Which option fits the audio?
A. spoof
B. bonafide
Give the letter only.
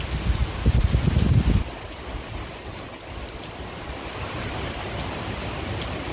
B